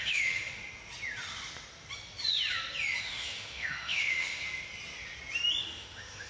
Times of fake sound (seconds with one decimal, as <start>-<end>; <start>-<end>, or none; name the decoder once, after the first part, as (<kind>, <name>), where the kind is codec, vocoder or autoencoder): 0.0-0.6 (autoencoder, DAC-VAE); 3.0-4.4; 5.6-6.3